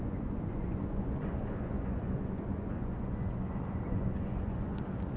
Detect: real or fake fake